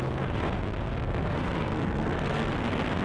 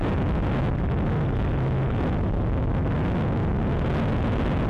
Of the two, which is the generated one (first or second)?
first